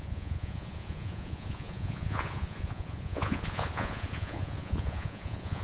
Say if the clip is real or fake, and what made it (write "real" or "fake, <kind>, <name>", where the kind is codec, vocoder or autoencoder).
fake, vocoder, Vocos